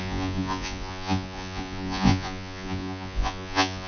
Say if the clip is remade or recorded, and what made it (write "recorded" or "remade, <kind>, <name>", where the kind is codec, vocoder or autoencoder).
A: remade, vocoder, Vocos